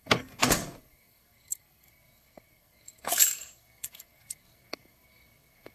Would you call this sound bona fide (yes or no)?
no